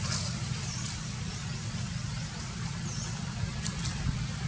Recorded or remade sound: recorded